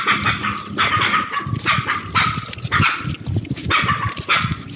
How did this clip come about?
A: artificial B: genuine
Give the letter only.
B